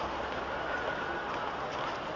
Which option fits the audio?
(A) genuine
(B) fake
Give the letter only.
A